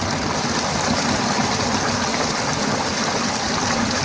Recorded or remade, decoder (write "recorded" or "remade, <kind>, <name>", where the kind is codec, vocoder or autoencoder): recorded